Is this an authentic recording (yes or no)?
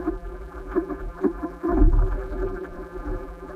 no